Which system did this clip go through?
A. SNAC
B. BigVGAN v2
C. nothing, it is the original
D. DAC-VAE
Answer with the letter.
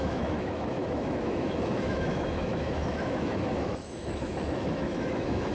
D